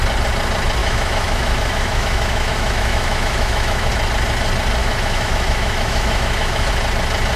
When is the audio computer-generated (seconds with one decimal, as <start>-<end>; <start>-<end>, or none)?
0.8-3.9; 4.8-6.7